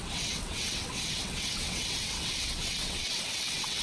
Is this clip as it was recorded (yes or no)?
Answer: no